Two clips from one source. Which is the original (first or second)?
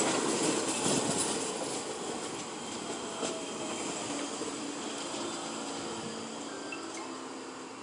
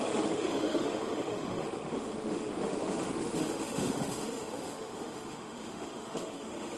first